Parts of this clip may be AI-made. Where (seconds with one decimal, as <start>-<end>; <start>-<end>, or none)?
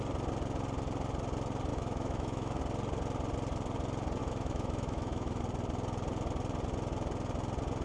1.7-2.6; 4.2-5.4